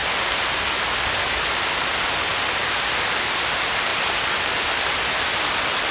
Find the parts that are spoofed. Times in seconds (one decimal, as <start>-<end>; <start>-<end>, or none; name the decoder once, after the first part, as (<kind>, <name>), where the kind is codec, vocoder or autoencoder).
none